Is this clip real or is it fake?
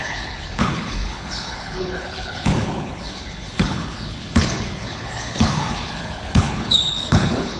fake